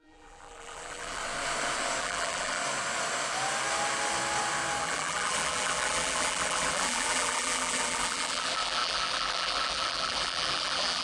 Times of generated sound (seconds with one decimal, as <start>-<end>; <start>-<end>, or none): 0.0-1.2; 2.0-2.6; 4.8-11.0